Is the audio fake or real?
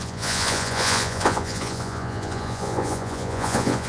fake